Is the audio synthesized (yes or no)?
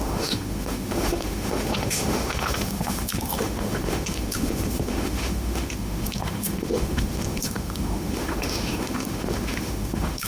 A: yes